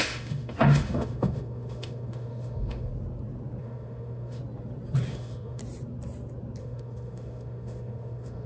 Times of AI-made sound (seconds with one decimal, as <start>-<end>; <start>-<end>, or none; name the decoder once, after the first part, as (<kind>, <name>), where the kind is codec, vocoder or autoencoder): 0.0-2.9 (autoencoder, DAC-VAE); 3.6-4.4; 5.1-5.6; 6.6-8.5